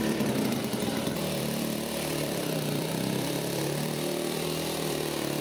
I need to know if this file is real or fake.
fake